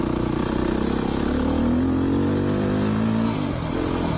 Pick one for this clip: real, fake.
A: real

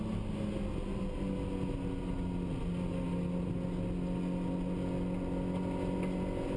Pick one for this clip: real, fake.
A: real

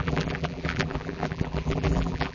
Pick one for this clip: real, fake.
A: fake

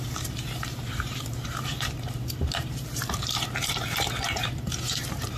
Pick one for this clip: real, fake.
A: fake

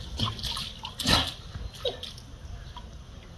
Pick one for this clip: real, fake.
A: real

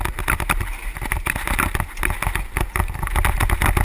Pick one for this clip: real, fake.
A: real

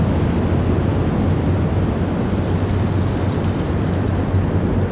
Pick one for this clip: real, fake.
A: real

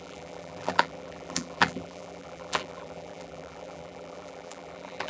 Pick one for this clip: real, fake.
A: fake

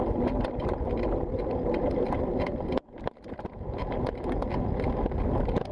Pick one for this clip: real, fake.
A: fake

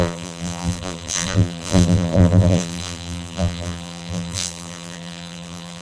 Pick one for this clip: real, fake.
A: fake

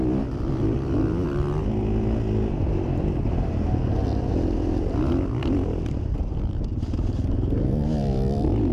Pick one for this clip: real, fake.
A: real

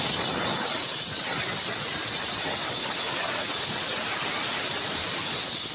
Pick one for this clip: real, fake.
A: real